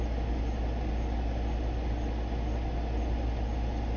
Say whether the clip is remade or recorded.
recorded